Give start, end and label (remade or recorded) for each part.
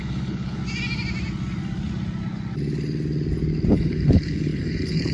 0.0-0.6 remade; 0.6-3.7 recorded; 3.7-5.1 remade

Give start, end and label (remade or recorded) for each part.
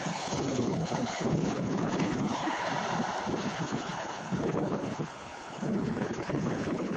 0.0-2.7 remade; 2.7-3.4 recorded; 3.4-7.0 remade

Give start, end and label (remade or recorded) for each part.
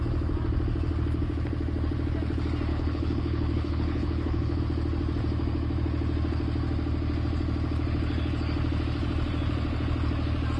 0.0-2.7 recorded; 2.7-4.6 remade; 4.6-10.6 recorded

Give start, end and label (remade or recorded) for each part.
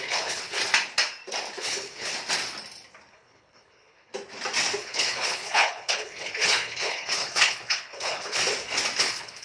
0.0-0.6 remade; 0.6-1.6 recorded; 1.6-2.1 remade; 2.1-3.1 recorded; 3.1-4.1 remade; 4.1-4.8 recorded; 4.8-8.4 remade; 8.4-9.0 recorded; 9.0-9.4 remade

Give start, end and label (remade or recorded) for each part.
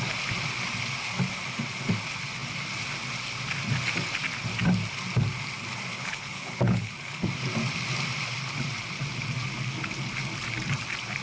0.0-5.9 recorded; 5.9-6.9 remade; 6.9-11.2 recorded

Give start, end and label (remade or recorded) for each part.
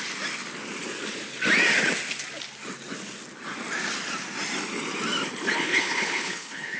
0.0-5.4 recorded; 5.4-6.8 remade